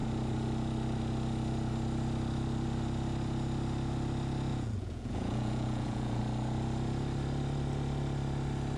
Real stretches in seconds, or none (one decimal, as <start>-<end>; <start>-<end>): 0.0-4.5; 6.2-8.8